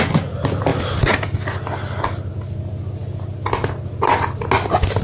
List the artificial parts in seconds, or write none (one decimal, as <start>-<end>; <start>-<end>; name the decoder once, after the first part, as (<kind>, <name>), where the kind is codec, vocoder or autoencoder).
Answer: none